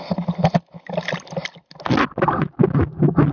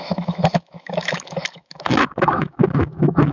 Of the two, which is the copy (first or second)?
second